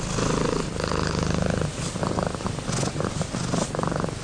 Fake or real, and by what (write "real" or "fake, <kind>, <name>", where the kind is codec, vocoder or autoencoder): real